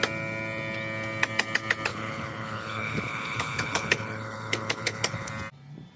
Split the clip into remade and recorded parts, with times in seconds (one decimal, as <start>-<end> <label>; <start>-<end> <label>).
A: 0.0-1.9 recorded; 1.9-5.3 remade; 5.3-6.0 recorded